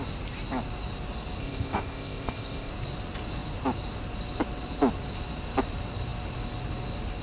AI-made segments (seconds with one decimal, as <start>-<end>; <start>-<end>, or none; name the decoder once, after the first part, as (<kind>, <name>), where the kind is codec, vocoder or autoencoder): 1.4-2.7 (codec, ZipCodec)